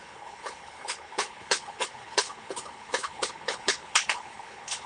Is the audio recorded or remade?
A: remade